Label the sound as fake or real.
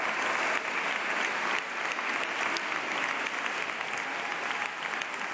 real